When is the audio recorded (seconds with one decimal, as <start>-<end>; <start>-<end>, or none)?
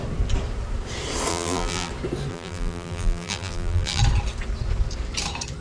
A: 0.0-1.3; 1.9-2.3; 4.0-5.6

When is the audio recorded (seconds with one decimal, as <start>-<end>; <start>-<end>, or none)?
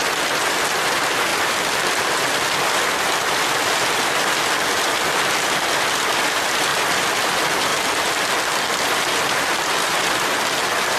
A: 0.0-1.3; 5.8-6.7; 7.3-7.7; 9.1-11.0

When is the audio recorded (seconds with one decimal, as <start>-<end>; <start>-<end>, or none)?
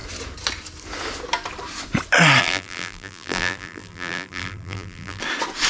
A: 0.0-2.4; 5.2-5.7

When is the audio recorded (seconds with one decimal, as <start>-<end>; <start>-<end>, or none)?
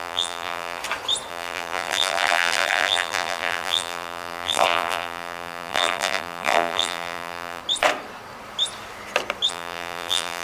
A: 0.8-1.3; 7.6-9.5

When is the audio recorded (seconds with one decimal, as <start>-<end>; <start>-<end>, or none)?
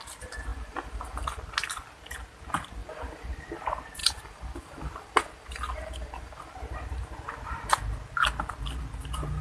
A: 0.0-0.5; 1.5-2.8; 3.4-4.0; 6.5-9.4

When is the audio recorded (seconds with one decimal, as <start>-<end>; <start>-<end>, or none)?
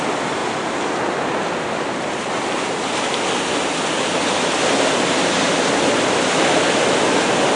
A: 0.0-7.6